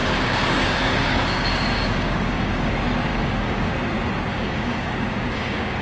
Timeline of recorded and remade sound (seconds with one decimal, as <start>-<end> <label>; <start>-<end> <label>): 0.0-2.7 remade; 2.7-3.1 recorded; 3.1-3.7 remade; 3.7-4.3 recorded; 4.3-5.8 remade